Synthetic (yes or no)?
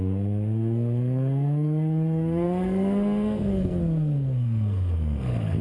yes